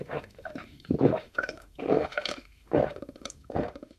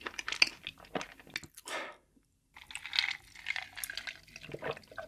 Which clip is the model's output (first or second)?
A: first